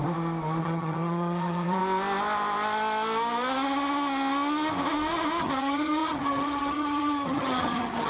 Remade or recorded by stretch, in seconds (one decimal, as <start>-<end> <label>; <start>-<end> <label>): 0.0-0.6 recorded; 0.6-1.8 remade; 1.8-5.4 recorded; 5.4-8.1 remade

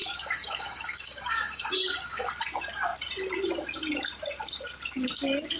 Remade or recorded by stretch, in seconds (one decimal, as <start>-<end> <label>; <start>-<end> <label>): 0.0-2.3 remade; 2.3-5.6 recorded

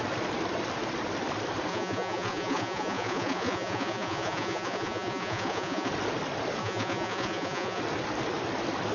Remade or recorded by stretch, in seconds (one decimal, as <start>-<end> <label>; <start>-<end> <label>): 0.0-1.7 recorded; 1.7-5.9 remade; 5.9-6.6 recorded; 6.6-7.8 remade; 7.8-8.9 recorded

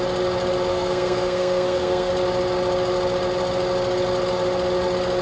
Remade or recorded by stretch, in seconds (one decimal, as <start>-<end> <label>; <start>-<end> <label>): 0.0-0.7 recorded; 0.7-2.1 remade; 2.1-5.2 recorded